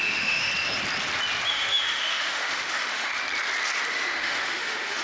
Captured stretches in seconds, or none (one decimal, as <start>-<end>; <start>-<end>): 0.5-1.5; 3.1-3.9